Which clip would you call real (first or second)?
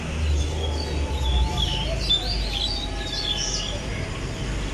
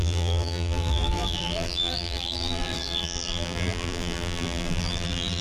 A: first